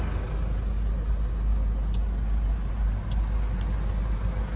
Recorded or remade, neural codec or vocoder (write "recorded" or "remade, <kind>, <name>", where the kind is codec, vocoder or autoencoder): recorded